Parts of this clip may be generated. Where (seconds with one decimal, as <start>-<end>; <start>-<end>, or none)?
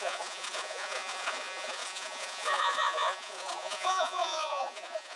0.0-5.2